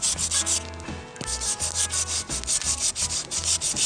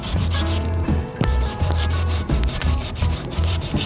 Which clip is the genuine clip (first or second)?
first